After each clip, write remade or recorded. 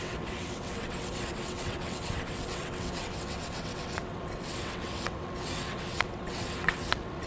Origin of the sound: remade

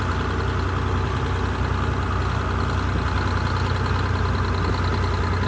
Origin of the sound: recorded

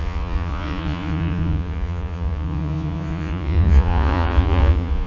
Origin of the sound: remade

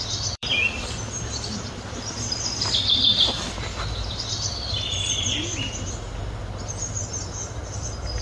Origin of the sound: remade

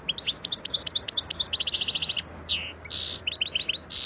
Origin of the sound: recorded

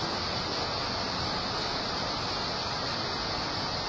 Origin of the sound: recorded